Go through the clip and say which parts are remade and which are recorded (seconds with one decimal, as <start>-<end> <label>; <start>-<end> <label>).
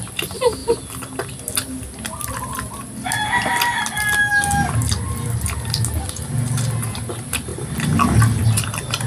0.0-9.1 recorded